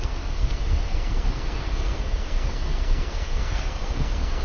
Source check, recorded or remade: remade